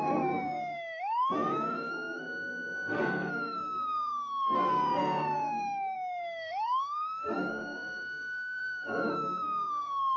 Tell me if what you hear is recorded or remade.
remade